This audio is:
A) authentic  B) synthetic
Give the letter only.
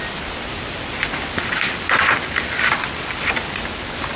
A